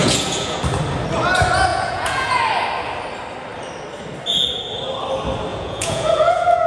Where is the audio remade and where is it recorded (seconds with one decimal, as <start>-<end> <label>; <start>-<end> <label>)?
0.0-0.6 remade; 0.6-1.7 recorded; 1.7-2.4 remade; 2.4-5.5 recorded; 5.5-6.7 remade